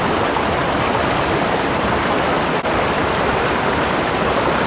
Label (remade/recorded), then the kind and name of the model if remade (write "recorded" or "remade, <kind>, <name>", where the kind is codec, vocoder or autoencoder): recorded